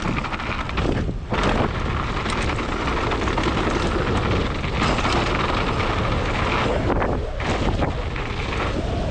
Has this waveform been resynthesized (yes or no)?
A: no